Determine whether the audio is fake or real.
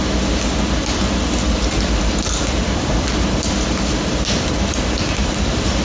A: real